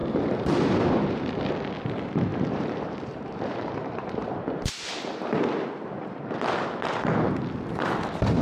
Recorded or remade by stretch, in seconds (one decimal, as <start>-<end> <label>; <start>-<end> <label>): 0.0-1.5 remade; 1.5-2.3 recorded; 2.3-4.9 remade; 4.9-8.4 recorded